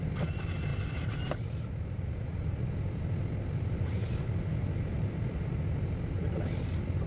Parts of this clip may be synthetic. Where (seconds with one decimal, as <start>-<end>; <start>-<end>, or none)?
0.7-2.2; 4.0-5.6